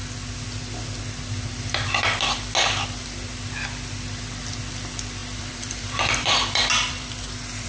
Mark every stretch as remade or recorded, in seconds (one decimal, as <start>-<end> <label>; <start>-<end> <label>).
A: 0.0-5.2 recorded; 5.2-7.7 remade